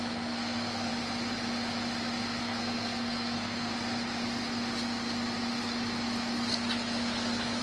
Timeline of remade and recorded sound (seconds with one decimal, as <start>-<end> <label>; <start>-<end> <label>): 0.0-0.9 remade; 0.9-2.4 recorded; 2.4-3.7 remade; 3.7-7.6 recorded